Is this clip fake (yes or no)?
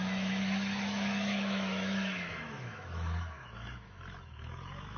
yes